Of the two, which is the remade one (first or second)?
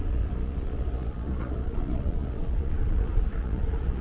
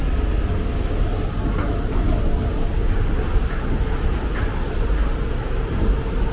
first